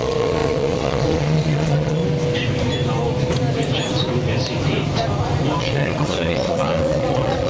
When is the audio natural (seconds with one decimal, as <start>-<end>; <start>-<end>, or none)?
2.0-5.6